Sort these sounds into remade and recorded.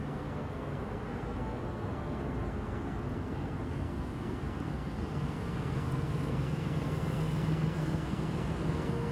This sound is remade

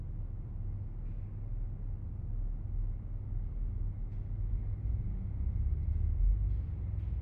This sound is recorded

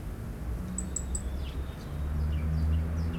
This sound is recorded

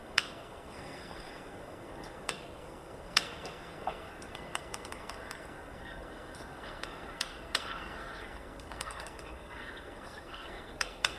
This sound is remade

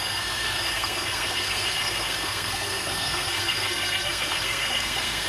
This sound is remade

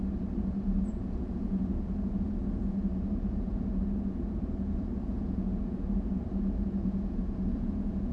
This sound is remade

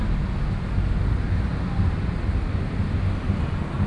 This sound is recorded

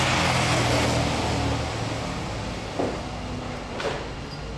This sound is recorded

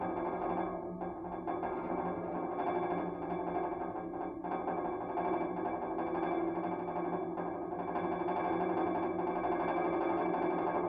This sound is recorded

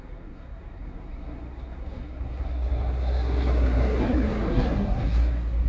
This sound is remade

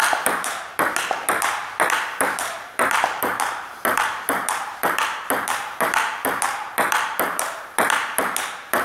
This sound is remade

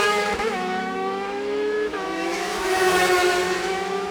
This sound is remade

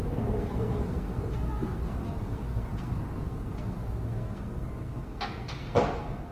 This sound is remade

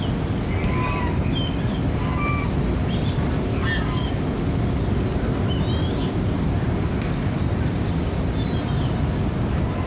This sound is recorded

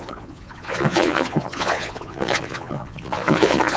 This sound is remade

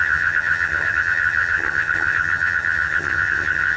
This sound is remade